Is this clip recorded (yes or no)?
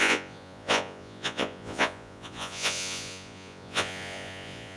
no